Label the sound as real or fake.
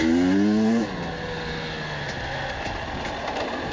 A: real